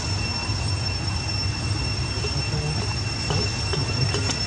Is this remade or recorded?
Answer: recorded